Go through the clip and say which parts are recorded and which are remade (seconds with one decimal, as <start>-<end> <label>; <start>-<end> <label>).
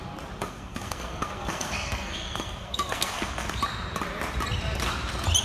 0.0-0.4 recorded; 0.4-3.6 remade; 3.6-5.4 recorded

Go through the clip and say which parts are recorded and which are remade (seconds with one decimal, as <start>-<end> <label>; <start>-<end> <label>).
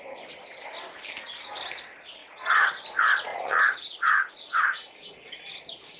0.0-2.2 recorded; 2.2-2.7 remade; 2.7-3.3 recorded; 3.3-4.6 remade; 4.6-6.0 recorded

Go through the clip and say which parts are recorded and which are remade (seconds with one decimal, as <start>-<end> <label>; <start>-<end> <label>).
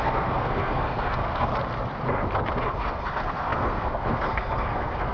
0.0-1.5 remade; 1.5-2.7 recorded; 2.7-5.1 remade